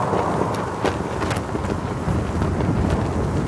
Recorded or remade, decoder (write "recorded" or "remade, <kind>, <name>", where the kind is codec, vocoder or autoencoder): recorded